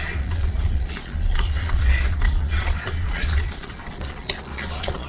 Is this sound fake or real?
fake